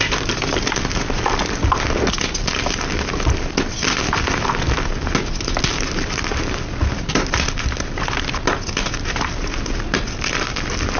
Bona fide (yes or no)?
yes